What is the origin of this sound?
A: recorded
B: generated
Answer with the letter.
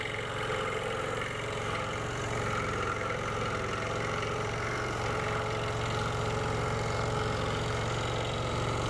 B